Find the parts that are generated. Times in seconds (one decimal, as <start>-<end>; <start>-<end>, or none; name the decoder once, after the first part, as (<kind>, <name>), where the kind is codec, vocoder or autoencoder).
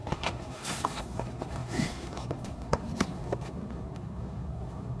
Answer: 0.0-5.0 (codec, SNAC)